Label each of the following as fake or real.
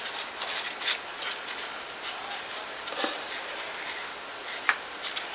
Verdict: real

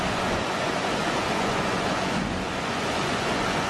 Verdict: fake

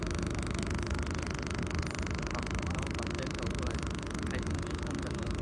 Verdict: real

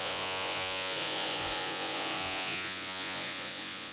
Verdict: fake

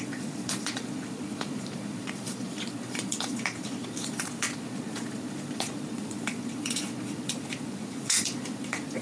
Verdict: fake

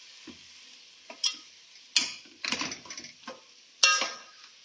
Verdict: real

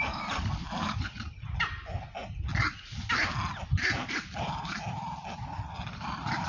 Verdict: real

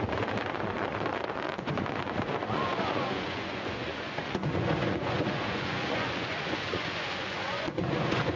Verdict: fake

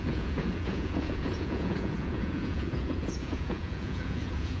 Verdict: fake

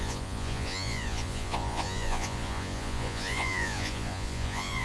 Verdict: fake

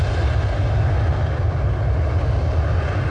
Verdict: real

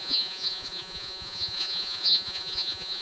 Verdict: fake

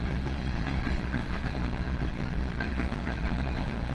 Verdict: fake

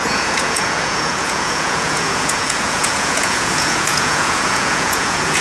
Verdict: fake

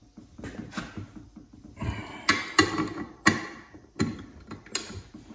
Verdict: real